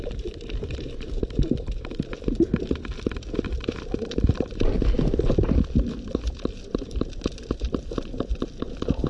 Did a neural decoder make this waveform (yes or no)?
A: yes